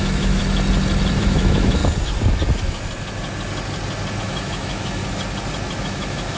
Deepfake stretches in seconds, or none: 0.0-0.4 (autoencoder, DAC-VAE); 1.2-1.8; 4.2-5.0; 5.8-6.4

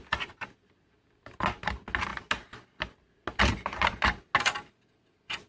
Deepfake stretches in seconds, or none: none

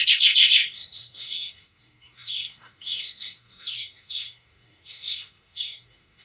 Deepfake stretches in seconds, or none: 0.0-6.2 (codec, SNAC)

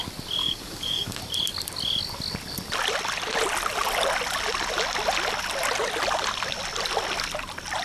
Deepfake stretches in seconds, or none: 0.4-1.2 (codec, DAC)

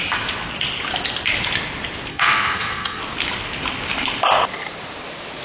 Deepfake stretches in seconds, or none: 2.1-3.0 (codec, SNAC)

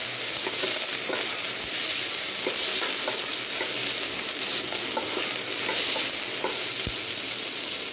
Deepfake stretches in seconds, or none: none

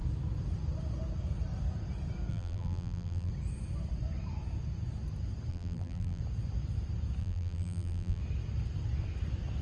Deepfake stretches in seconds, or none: 2.3-3.3 (vocoder, BigVGAN v2); 5.5-6.2; 7.2-8.2

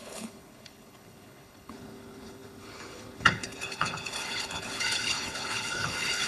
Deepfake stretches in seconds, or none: 0.0-6.3 (codec, HILCodec)